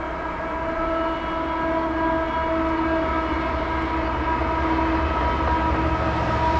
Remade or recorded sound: recorded